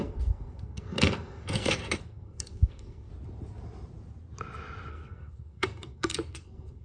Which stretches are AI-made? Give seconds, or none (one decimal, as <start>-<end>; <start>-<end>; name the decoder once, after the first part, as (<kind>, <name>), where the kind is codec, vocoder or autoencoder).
0.0-3.1 (codec, SNAC); 4.9-6.8